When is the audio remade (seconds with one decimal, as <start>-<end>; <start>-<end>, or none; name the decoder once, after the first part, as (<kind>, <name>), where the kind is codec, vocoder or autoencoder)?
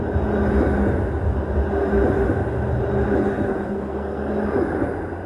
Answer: 3.3-4.3 (codec, SNAC)